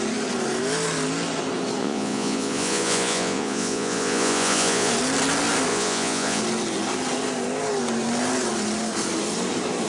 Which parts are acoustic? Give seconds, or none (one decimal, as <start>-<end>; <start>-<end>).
0.0-1.8; 4.9-5.7; 6.4-9.9